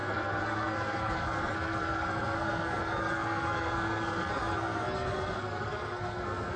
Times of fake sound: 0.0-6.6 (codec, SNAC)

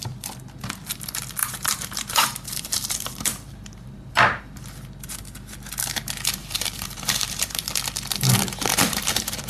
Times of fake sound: 1.4-4.4 (vocoder, BigVGAN v2); 6.4-7.7; 8.7-9.5

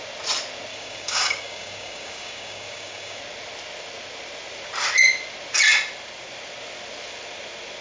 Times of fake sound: 0.7-3.2 (codec, DAC)

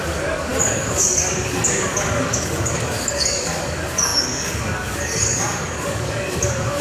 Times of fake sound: 0.0-6.8 (codec, DAC)

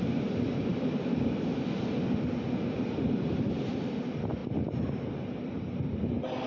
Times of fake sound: none

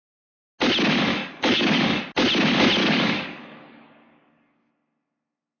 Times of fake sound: 1.1-2.0 (codec, DAC); 2.8-4.7

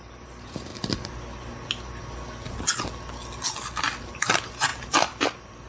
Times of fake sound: 0.0-0.7 (vocoder, BigVGAN v2); 4.0-5.7